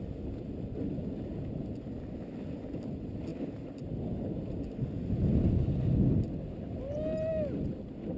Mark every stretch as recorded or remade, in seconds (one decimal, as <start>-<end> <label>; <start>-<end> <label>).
0.0-8.2 recorded